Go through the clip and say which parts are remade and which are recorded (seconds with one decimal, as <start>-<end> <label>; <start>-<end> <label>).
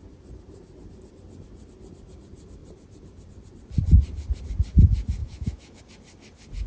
0.0-5.2 recorded; 5.2-5.8 remade; 5.8-6.7 recorded